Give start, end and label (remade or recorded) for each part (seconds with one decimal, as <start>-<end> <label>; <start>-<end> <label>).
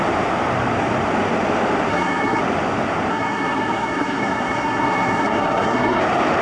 0.0-1.9 recorded; 1.9-2.4 remade; 2.4-3.1 recorded; 3.1-6.0 remade; 6.0-6.4 recorded